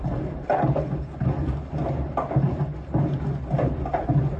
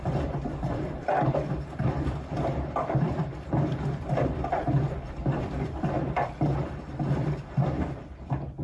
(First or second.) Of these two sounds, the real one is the first